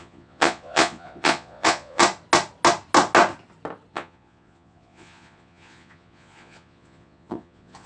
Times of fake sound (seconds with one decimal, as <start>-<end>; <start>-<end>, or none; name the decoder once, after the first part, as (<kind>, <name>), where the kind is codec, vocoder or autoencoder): 0.0-2.0 (vocoder, Vocos); 3.9-7.9